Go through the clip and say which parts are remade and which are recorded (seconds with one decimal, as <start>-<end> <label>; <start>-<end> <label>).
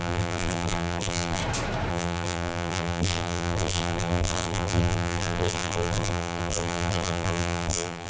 0.0-1.4 remade; 1.4-1.9 recorded; 1.9-8.1 remade